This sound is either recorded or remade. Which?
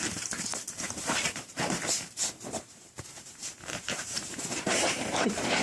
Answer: remade